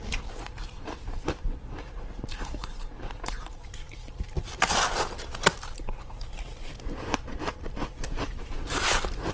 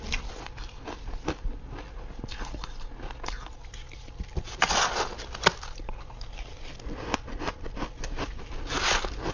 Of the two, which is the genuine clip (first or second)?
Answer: second